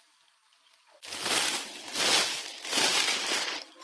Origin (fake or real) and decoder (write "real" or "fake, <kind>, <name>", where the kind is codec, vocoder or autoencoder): real